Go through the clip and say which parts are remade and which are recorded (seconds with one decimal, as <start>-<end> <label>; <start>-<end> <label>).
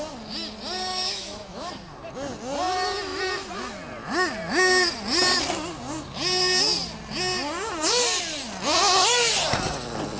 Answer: 0.0-0.9 recorded; 0.9-1.7 remade; 1.7-10.2 recorded